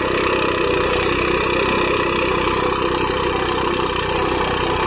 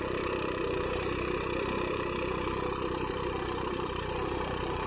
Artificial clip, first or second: second